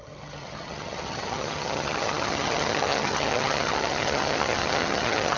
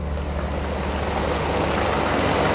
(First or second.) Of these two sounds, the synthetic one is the first